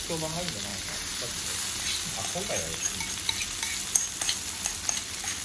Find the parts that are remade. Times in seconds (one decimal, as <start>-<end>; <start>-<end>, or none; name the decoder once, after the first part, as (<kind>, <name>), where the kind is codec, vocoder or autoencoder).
0.7-1.4 (vocoder, BigVGAN v2)

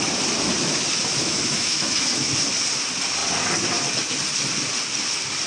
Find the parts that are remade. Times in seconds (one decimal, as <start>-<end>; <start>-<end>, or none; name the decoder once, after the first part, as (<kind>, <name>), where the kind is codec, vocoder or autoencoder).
1.2-2.3 (autoencoder, DAC-VAE)

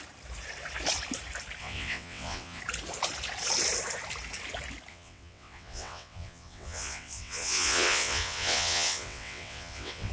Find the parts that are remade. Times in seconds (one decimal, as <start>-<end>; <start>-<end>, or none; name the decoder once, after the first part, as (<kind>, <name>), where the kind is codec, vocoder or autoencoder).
1.6-2.6 (vocoder, WaveNeXt); 4.9-10.1

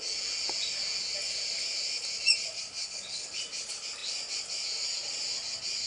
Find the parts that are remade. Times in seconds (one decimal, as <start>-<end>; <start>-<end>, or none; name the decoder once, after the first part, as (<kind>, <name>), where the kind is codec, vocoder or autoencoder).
2.8-3.4 (codec, HILCodec)

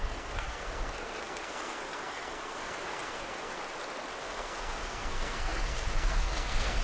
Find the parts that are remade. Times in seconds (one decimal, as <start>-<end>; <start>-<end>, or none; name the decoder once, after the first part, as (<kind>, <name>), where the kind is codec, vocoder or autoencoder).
0.0-3.6 (codec, SNAC); 4.2-6.8